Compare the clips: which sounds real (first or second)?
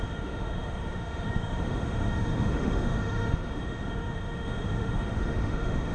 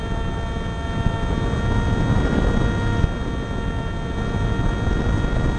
second